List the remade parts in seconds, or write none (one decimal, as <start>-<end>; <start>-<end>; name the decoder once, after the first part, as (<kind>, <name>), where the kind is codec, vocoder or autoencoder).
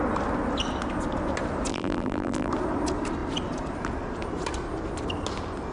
1.7-2.5 (vocoder, BigVGAN v2)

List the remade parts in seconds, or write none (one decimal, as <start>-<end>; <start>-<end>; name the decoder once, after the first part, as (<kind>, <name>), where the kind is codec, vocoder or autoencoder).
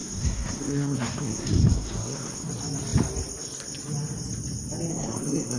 0.0-2.5 (codec, SNAC); 4.9-5.6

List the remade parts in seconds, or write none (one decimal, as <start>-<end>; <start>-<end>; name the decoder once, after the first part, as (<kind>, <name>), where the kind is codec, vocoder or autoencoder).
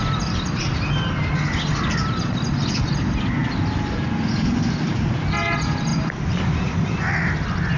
none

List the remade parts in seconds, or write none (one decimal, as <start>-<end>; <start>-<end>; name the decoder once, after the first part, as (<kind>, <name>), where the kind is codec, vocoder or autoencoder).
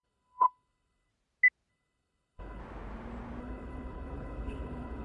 0.0-1.1 (codec, HILCodec); 1.7-2.6; 3.4-5.0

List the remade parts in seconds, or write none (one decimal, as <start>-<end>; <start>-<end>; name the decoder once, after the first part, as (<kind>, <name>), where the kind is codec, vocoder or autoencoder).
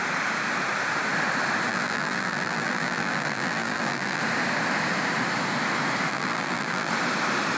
1.7-4.2 (vocoder, BigVGAN v2); 6.1-6.9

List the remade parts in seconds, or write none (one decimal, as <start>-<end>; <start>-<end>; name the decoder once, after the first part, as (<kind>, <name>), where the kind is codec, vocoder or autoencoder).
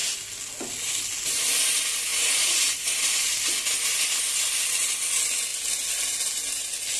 2.1-3.5 (vocoder, BigVGAN v2)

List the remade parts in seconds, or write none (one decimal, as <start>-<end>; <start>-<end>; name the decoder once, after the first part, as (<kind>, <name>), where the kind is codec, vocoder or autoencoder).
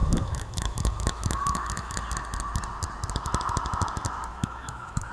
0.0-2.0 (autoencoder, DAC-VAE); 4.3-5.1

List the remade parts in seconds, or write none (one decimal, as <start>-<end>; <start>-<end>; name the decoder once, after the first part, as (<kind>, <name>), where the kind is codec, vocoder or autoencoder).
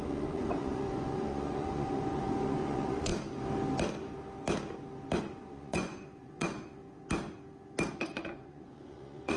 0.0-3.1 (vocoder, Vocos); 5.2-6.8; 7.9-9.4